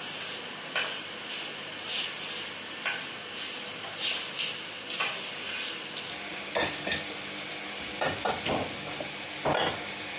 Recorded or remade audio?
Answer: recorded